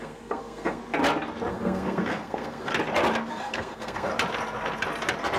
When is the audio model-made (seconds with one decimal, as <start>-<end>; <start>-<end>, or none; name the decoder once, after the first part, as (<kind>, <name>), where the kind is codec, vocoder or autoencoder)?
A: 0.0-0.8 (codec, SNAC); 1.5-2.7; 3.3-4.1